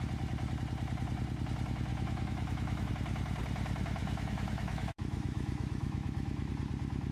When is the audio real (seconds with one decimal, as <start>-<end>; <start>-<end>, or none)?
0.0-1.9; 2.9-4.0; 6.5-7.1